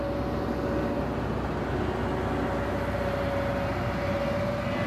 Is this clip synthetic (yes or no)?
no